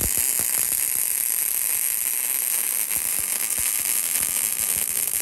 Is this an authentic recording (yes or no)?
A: yes